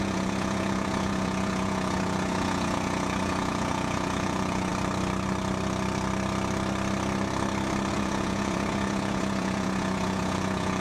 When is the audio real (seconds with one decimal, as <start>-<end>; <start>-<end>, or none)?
4.7-7.9